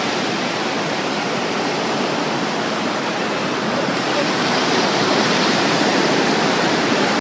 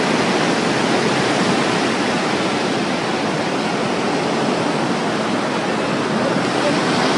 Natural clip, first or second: second